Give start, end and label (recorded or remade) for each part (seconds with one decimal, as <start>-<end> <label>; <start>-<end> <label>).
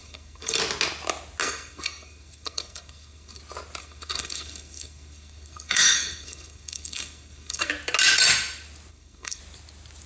0.0-0.6 remade; 0.6-1.4 recorded; 1.4-3.4 remade; 3.4-3.8 recorded; 3.8-7.7 remade; 7.7-8.9 recorded; 8.9-9.4 remade; 9.4-10.1 recorded